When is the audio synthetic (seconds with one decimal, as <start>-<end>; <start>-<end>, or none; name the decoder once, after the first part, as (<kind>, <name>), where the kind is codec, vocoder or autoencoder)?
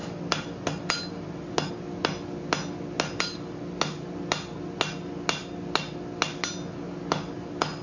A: none